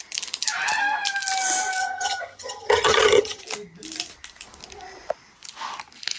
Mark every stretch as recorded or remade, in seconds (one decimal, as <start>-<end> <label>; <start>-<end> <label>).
0.0-1.8 recorded; 1.8-3.4 remade; 3.4-6.2 recorded